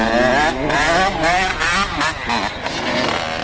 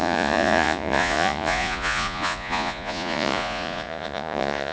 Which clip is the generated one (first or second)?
second